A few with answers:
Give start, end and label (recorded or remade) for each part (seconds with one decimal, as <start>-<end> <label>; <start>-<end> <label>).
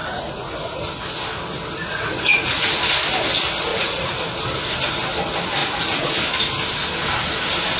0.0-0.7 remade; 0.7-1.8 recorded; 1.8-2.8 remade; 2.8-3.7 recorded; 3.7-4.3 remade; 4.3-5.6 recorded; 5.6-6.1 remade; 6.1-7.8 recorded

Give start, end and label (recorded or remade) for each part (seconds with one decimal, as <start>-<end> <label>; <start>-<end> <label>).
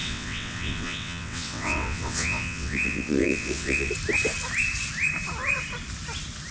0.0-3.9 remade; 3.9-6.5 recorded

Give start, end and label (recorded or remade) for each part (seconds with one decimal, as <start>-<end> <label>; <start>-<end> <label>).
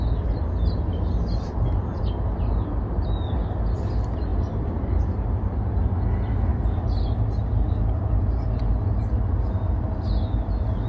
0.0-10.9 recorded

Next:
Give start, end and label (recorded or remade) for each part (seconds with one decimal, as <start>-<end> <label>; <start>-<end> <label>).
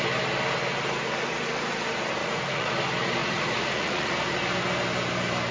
0.0-2.2 recorded; 2.2-2.7 remade; 2.7-3.2 recorded; 3.2-4.1 remade; 4.1-5.5 recorded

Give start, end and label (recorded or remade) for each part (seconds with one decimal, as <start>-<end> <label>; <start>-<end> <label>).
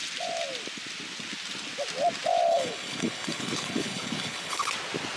0.0-2.5 recorded; 2.5-4.7 remade; 4.7-5.2 recorded